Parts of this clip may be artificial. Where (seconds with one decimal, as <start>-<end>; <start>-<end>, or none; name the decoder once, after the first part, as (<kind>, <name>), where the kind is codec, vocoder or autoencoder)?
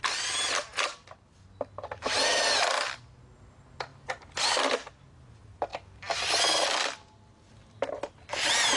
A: 3.9-4.9 (vocoder, BigVGAN v2); 5.7-6.9